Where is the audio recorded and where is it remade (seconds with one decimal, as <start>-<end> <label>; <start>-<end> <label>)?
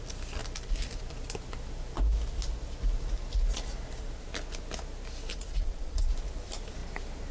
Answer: 0.0-5.3 recorded; 5.3-6.1 remade; 6.1-7.3 recorded